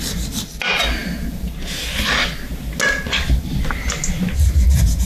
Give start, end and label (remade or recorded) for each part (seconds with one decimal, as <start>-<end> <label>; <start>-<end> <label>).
0.0-5.1 recorded